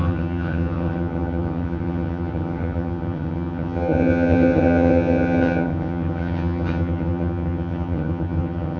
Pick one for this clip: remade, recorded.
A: remade